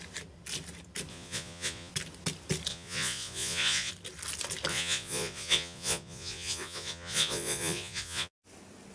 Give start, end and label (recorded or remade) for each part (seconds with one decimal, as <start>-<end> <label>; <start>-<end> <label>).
0.0-1.1 recorded; 1.1-1.9 remade; 1.9-2.7 recorded; 2.7-3.9 remade; 3.9-4.7 recorded; 4.7-8.3 remade; 8.3-8.9 recorded